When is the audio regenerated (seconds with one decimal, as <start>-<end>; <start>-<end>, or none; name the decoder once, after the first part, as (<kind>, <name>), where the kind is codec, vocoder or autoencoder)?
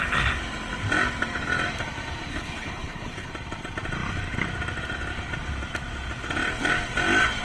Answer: 2.3-3.3 (codec, HILCodec)